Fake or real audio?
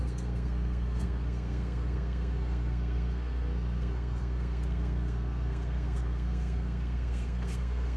fake